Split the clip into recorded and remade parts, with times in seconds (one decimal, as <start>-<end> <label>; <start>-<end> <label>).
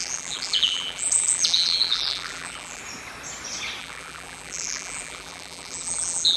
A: 0.0-2.8 remade; 2.8-3.8 recorded; 3.8-6.4 remade